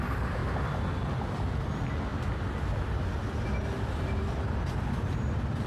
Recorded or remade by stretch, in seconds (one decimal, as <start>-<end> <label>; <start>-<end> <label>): 0.0-5.7 recorded